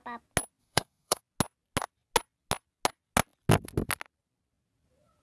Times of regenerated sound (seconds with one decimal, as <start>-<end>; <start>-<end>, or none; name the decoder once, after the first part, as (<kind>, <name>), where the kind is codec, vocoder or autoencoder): 0.6-1.2 (codec, SNAC)